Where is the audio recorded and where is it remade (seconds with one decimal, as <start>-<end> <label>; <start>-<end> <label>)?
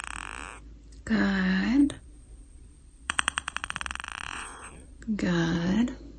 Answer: 0.0-1.8 recorded; 1.8-5.0 remade; 5.0-6.2 recorded